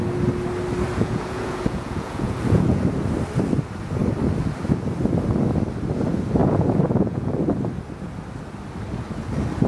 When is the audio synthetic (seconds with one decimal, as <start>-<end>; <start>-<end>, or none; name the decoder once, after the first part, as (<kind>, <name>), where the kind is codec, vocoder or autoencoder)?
0.9-2.8 (vocoder, Vocos); 6.4-7.3